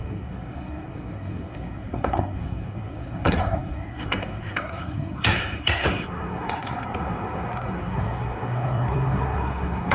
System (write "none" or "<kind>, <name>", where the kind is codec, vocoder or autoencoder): codec, SNAC